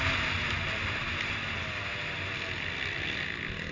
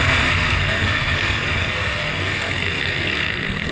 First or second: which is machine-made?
second